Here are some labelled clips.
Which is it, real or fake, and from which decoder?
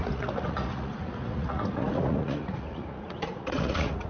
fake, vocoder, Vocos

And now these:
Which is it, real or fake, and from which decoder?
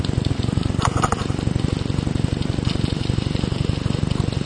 real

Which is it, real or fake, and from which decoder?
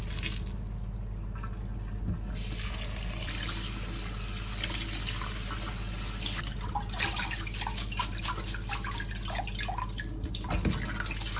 real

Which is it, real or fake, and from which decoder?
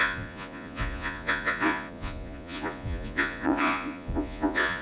fake, vocoder, Vocos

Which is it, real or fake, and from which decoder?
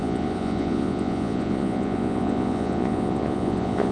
fake, vocoder, Vocos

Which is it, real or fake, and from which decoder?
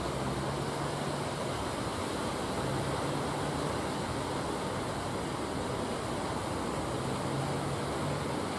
real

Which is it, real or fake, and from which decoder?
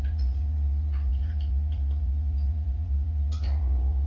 fake, vocoder, Vocos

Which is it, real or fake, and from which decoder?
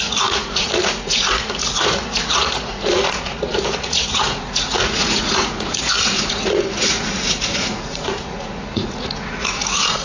fake, vocoder, Vocos